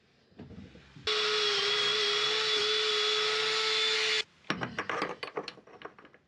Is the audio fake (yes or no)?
no